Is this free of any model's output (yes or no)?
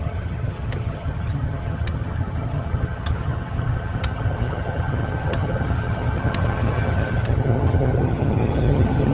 no